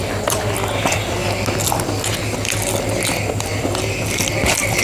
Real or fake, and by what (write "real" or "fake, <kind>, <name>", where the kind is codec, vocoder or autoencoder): real